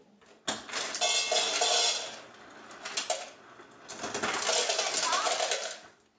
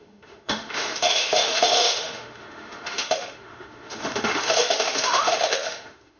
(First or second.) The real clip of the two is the first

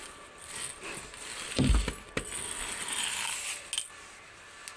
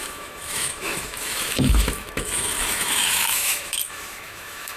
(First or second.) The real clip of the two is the first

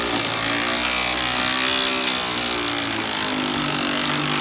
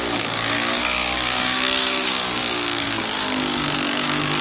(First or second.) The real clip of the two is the first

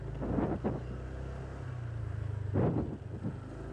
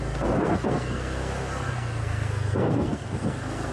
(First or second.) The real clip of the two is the first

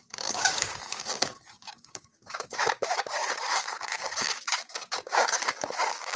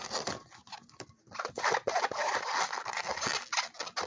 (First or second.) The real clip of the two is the second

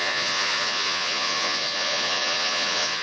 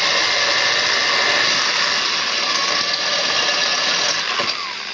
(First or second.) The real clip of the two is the second